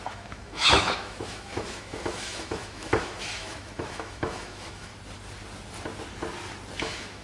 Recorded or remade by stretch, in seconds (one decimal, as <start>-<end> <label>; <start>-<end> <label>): 0.0-4.9 remade; 4.9-6.8 recorded; 6.8-7.2 remade